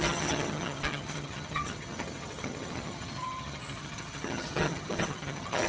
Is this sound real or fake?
fake